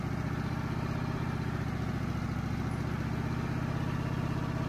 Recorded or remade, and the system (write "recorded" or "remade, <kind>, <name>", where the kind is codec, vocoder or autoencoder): recorded